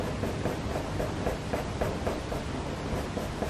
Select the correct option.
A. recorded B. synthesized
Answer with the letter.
A